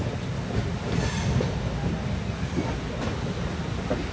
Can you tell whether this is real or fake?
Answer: real